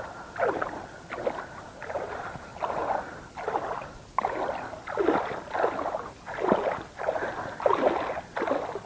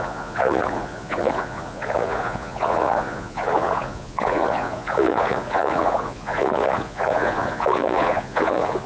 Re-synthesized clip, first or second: second